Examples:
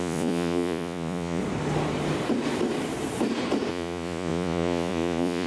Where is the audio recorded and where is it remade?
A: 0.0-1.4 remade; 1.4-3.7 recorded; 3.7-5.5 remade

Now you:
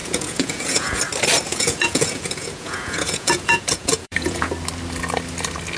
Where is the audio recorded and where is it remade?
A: 0.0-1.0 remade; 1.0-1.5 recorded; 1.5-4.5 remade; 4.5-5.8 recorded